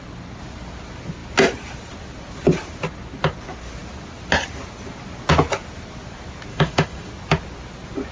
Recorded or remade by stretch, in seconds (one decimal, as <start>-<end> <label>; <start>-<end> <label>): 0.0-6.5 recorded; 6.5-7.1 remade; 7.1-8.1 recorded

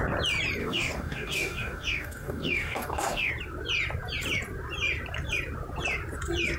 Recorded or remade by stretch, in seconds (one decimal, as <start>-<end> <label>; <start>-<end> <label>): 0.0-0.6 recorded; 0.6-3.3 remade; 3.3-6.6 recorded

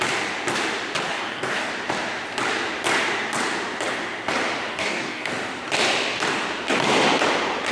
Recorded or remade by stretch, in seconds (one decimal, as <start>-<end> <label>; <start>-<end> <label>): 0.0-1.1 recorded; 1.1-1.7 remade; 1.7-4.7 recorded; 4.7-5.3 remade; 5.3-7.7 recorded

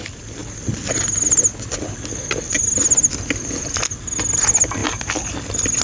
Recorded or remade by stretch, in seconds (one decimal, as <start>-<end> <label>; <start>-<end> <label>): 0.0-5.8 recorded

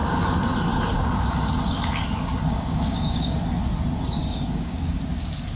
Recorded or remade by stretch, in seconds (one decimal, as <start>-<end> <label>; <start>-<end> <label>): 0.0-2.5 recorded; 2.5-3.4 remade; 3.4-4.2 recorded; 4.2-5.0 remade; 5.0-5.6 recorded